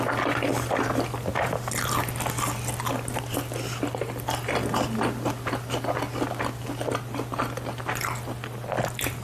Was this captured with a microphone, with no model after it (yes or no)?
yes